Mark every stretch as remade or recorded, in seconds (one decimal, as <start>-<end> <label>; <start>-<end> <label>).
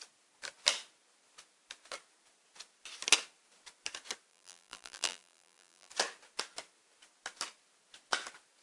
0.0-4.3 recorded; 4.3-5.9 remade; 5.9-8.6 recorded